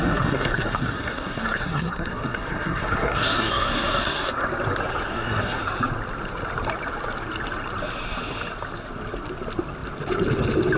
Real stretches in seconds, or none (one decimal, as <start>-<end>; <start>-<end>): 4.4-5.1; 5.6-10.8